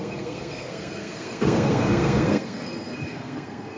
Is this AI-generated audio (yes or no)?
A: yes